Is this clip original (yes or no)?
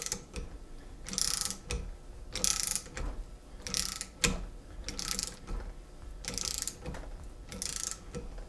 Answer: yes